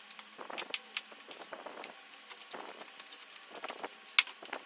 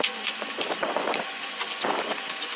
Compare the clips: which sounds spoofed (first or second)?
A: second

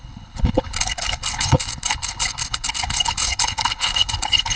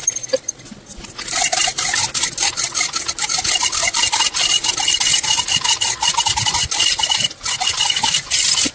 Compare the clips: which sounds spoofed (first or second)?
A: first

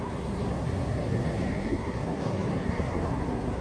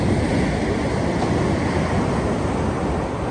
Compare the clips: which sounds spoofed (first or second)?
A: first